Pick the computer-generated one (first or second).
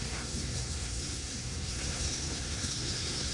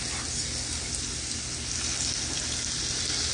first